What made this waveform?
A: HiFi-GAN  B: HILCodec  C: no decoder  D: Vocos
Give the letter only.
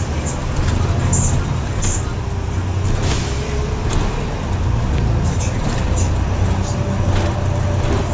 C